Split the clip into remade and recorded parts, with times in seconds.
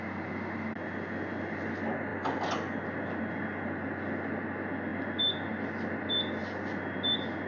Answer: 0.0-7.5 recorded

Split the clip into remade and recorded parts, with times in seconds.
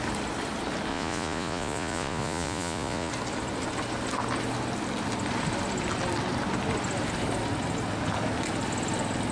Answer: 0.0-0.9 recorded; 0.9-3.1 remade; 3.1-9.3 recorded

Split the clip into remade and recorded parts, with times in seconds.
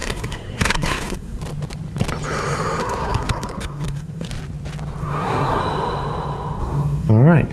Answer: 0.0-1.4 remade; 1.4-2.8 recorded; 2.8-4.3 remade; 4.3-5.0 recorded; 5.0-5.6 remade; 5.6-6.6 recorded; 6.6-7.1 remade; 7.1-7.5 recorded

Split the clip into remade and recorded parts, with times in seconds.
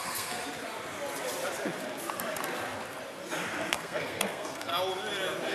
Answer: 0.0-0.4 remade; 0.4-3.7 recorded; 3.7-4.7 remade; 4.7-5.5 recorded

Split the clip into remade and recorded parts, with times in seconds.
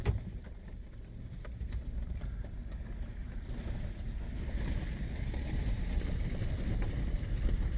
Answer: 0.0-3.2 remade; 3.2-4.3 recorded; 4.3-7.8 remade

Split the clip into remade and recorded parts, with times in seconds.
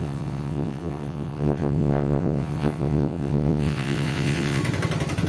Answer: 0.0-4.6 remade; 4.6-5.3 recorded